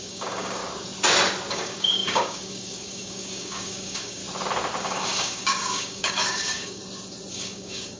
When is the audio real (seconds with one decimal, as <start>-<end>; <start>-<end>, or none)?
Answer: 0.6-1.5; 4.2-4.8; 6.8-7.3